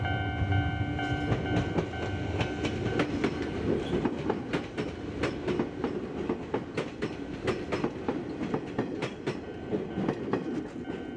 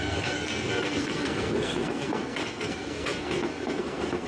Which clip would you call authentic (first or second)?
first